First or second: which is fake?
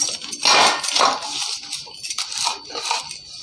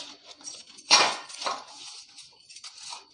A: second